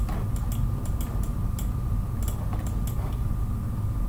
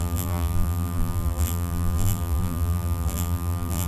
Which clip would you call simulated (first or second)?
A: second